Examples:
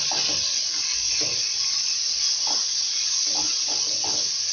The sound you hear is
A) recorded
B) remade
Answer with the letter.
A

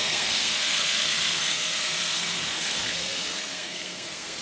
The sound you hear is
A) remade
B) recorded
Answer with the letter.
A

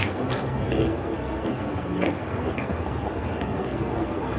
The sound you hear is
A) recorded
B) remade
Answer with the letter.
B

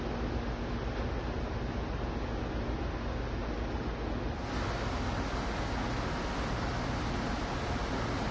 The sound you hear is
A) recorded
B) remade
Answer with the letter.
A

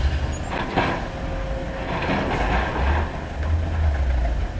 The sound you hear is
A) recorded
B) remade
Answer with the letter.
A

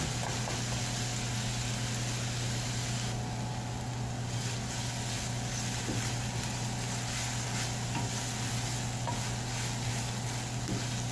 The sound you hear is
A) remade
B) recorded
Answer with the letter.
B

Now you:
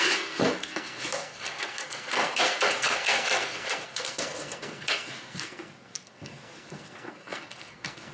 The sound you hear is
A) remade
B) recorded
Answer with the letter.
A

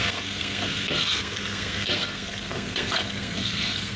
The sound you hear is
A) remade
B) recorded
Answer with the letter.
A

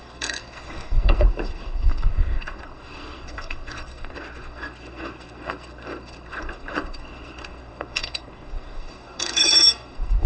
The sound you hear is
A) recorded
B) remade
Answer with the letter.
B